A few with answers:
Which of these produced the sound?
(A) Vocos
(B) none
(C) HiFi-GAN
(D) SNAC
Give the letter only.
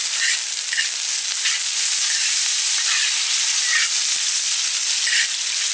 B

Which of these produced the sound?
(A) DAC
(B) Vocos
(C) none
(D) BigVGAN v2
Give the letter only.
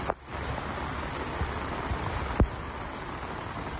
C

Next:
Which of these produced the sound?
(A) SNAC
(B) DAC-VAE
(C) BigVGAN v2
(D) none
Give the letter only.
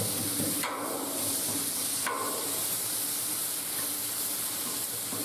C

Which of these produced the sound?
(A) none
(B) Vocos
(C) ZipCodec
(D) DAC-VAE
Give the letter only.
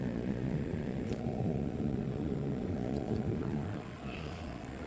B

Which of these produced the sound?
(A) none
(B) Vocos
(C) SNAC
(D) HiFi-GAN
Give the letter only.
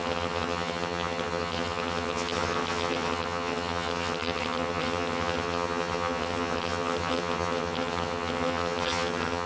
D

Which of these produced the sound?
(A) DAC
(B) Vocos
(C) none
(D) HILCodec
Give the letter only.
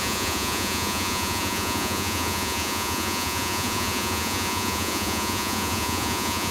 B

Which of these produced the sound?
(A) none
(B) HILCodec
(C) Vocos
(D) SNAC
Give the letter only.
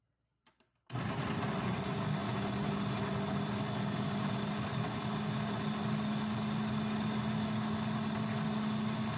A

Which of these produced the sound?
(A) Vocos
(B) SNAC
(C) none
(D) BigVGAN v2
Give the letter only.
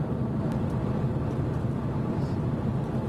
D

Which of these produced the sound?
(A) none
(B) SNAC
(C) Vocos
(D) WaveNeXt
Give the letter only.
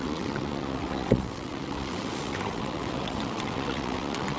D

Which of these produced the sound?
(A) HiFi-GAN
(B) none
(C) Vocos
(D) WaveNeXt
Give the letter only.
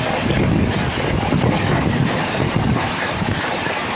B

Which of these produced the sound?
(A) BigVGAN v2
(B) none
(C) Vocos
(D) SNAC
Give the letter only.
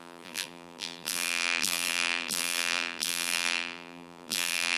A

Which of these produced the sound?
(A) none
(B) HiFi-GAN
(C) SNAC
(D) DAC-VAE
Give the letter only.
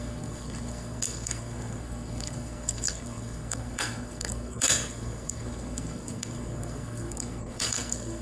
C